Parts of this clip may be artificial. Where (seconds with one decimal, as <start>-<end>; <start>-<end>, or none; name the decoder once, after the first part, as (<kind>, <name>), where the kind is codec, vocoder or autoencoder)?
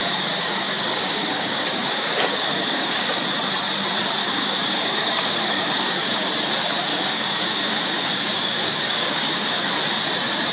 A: 0.0-3.2 (codec, DAC); 4.2-6.3; 6.9-9.7